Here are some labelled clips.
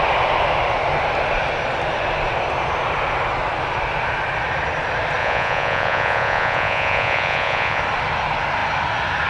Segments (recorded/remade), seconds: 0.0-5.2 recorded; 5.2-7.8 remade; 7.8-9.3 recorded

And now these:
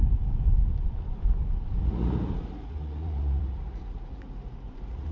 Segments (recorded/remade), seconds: 0.0-1.8 recorded; 1.8-5.1 remade

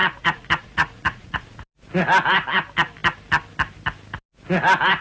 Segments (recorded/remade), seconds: 0.0-1.6 remade; 1.6-5.0 recorded